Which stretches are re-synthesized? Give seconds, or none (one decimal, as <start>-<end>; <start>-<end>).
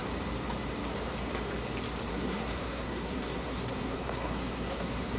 2.1-5.2